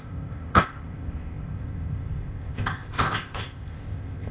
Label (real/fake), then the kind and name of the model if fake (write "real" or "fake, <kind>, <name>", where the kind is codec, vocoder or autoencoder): fake, codec, ZipCodec